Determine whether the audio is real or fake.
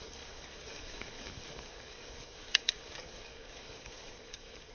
fake